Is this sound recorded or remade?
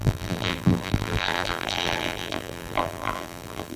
remade